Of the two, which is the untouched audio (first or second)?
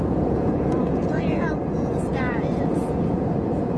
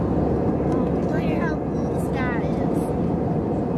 second